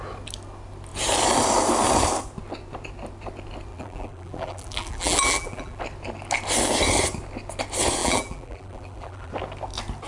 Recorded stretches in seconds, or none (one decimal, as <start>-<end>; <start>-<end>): 0.0-3.7; 5.8-8.0; 9.3-10.1